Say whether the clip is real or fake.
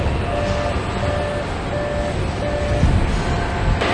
real